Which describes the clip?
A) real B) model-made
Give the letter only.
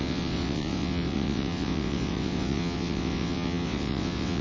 B